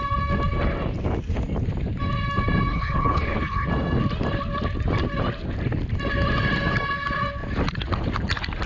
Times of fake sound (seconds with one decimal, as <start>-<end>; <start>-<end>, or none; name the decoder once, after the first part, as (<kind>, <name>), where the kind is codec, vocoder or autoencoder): 2.7-3.7 (codec, HILCodec)